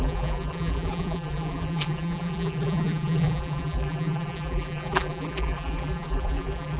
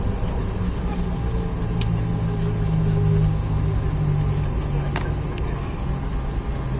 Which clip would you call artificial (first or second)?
first